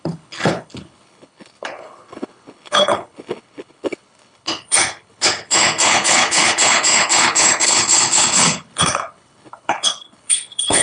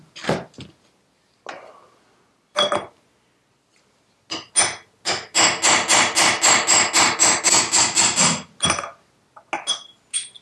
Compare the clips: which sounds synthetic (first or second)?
first